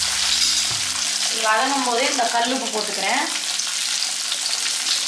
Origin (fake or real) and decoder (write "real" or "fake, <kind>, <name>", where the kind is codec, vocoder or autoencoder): real